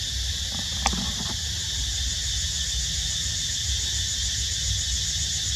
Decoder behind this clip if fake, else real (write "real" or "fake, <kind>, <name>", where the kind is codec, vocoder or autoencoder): real